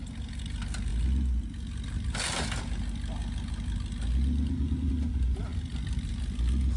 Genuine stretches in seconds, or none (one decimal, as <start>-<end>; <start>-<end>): 0.0-6.8